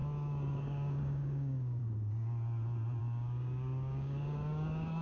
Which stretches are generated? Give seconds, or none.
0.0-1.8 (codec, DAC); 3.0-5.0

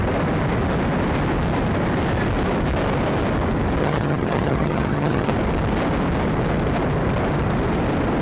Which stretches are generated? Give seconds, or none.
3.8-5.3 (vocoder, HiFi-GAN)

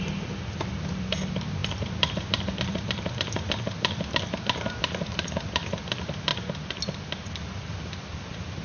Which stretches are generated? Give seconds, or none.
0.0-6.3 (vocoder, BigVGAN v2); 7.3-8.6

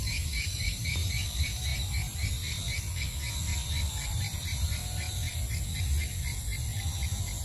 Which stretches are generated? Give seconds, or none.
0.0-1.7 (vocoder, BigVGAN v2); 4.1-4.8

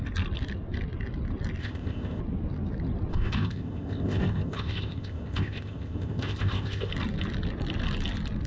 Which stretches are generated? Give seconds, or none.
1.6-2.2 (codec, ZipCodec); 3.1-6.9

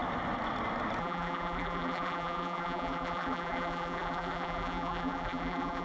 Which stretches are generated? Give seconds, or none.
1.0-5.8 (vocoder, BigVGAN v2)

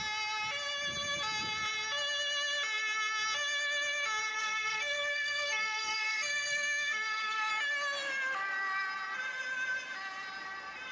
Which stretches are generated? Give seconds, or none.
4.3-7.5 (codec, SNAC)